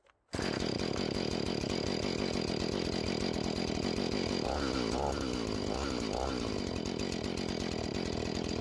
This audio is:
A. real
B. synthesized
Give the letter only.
A